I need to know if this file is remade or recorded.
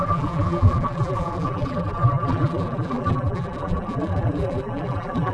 remade